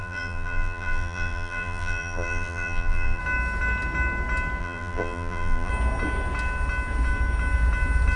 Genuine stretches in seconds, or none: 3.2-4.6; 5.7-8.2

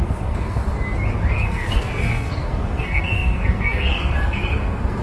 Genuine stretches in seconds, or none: 0.6-1.3

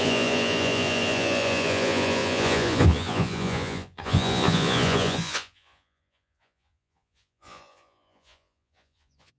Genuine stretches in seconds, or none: none

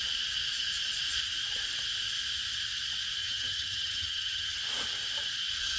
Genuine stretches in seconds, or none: 0.0-3.2; 4.6-5.8